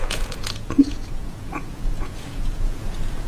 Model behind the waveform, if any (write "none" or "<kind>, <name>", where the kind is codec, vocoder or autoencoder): vocoder, Vocos